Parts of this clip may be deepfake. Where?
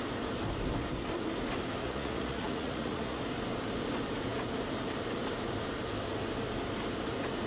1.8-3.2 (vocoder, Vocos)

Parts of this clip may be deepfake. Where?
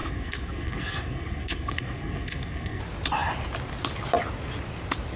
0.0-2.8 (codec, SNAC)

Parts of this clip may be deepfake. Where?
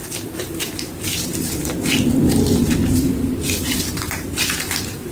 0.0-1.5 (vocoder, BigVGAN v2); 2.6-4.4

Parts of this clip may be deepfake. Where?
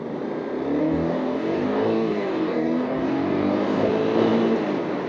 0.8-3.9 (codec, DAC)